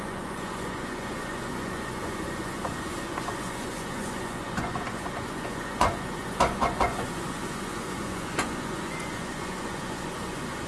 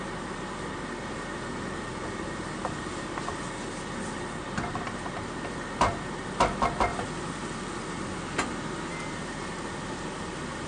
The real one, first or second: second